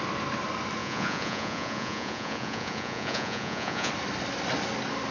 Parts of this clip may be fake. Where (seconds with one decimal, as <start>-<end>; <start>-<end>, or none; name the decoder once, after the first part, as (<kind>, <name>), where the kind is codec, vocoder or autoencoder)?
0.8-3.9 (vocoder, Vocos)